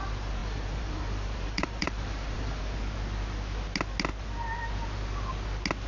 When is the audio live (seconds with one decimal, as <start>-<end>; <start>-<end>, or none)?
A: 0.0-0.4; 2.6-5.9

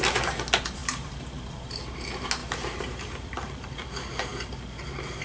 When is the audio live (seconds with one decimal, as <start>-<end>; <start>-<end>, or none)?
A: 0.0-0.8; 1.8-2.4; 3.7-5.2

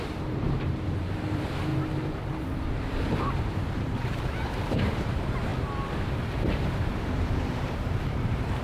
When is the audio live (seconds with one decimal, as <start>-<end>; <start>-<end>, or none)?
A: 1.7-3.1; 5.5-6.4